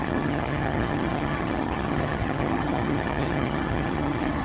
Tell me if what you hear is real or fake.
fake